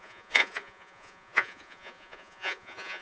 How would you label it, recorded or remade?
remade